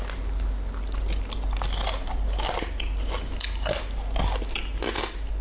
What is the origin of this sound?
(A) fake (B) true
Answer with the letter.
B